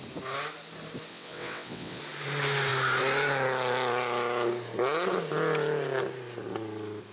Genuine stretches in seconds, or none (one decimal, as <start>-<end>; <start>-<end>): 0.0-1.1; 2.0-7.1